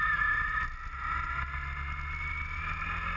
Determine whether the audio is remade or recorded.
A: recorded